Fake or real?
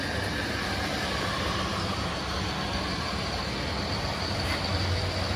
real